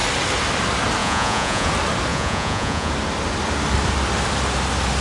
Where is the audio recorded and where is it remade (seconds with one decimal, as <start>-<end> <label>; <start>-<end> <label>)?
0.0-1.0 recorded; 1.0-1.7 remade; 1.7-2.1 recorded; 2.1-2.9 remade; 2.9-5.0 recorded